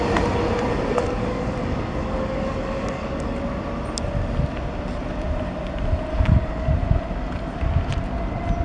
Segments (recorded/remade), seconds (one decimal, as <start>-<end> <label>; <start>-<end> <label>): 0.0-0.7 recorded; 0.7-3.4 remade; 3.4-6.1 recorded; 6.1-6.7 remade; 6.7-8.6 recorded